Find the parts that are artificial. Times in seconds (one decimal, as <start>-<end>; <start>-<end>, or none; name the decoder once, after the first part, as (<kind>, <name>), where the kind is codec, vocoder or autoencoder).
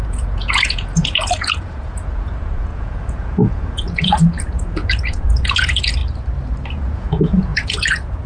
0.0-6.0 (vocoder, Vocos); 6.7-8.3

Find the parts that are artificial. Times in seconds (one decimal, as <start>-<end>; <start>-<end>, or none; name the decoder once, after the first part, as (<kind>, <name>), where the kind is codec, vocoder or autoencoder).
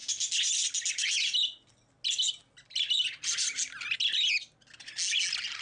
none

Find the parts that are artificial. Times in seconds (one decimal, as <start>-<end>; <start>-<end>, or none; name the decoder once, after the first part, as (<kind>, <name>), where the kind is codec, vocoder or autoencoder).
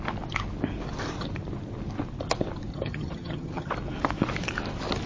2.7-3.7 (vocoder, HiFi-GAN)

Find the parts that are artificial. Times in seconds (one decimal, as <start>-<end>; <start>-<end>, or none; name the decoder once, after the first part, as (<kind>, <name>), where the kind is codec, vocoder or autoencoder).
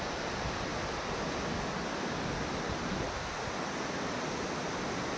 none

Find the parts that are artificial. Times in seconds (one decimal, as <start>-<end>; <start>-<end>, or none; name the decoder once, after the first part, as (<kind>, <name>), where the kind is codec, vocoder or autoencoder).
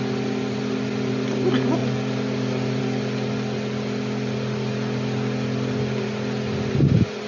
none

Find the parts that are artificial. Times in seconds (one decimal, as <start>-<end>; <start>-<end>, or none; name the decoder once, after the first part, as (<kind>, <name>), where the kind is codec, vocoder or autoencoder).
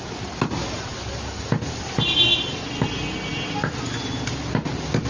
none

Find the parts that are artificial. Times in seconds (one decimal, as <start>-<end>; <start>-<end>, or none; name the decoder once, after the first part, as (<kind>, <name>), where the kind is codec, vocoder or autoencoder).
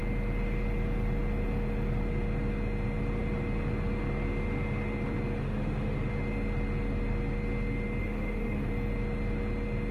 5.4-6.1 (autoencoder, DAC-VAE); 8.0-8.7